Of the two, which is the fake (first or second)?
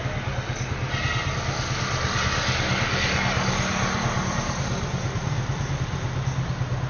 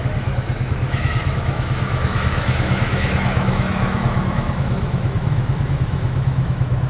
second